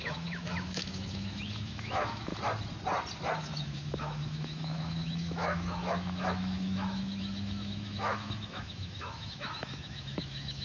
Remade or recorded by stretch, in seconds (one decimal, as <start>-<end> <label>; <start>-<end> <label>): 0.0-2.3 remade; 2.3-3.4 recorded; 3.4-10.6 remade